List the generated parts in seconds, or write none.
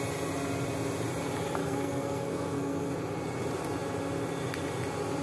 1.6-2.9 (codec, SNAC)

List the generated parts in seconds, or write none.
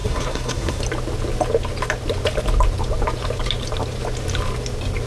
0.0-0.8 (codec, SNAC)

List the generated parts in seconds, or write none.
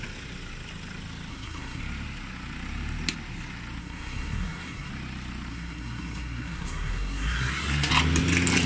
1.3-1.8 (codec, SNAC); 3.8-4.9; 5.5-7.9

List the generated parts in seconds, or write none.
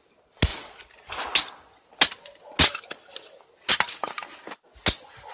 none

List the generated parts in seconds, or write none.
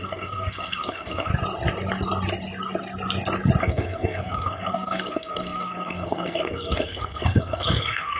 0.0-1.3 (codec, SNAC); 3.6-8.2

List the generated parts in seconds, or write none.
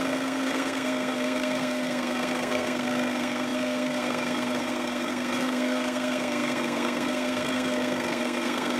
0.0-8.8 (codec, SNAC)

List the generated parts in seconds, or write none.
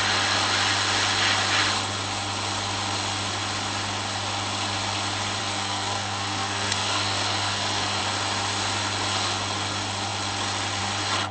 5.4-8.0 (codec, SNAC)